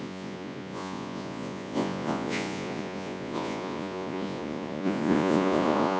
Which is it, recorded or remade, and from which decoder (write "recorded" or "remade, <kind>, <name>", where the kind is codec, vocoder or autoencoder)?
remade, vocoder, Vocos